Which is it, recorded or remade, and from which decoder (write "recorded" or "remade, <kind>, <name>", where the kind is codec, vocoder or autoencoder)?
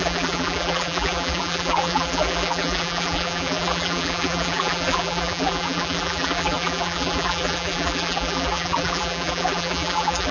remade, vocoder, BigVGAN v2